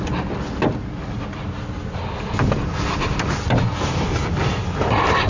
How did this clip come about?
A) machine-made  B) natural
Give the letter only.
B